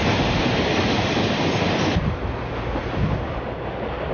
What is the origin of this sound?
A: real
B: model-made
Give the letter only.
A